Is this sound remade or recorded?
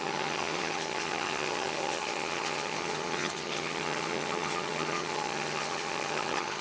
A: remade